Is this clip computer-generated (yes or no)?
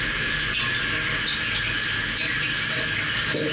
no